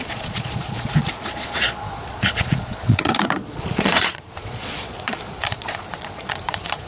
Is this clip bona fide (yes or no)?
no